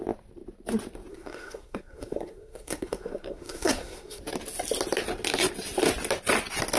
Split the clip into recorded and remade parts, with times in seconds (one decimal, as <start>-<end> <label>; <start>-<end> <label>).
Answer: 0.0-1.1 recorded; 1.1-4.2 remade; 4.2-6.8 recorded